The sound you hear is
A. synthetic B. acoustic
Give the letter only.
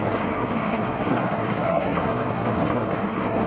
A